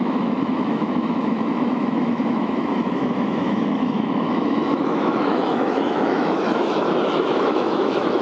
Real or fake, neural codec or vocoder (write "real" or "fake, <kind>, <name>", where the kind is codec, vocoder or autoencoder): fake, autoencoder, DAC-VAE